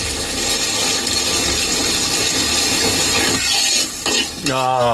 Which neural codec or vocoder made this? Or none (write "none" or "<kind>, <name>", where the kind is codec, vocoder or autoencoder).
none